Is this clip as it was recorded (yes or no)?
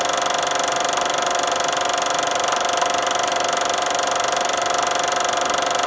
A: yes